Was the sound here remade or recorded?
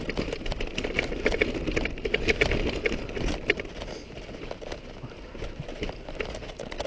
recorded